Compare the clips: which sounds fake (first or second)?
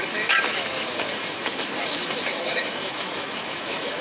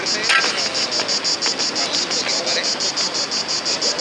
first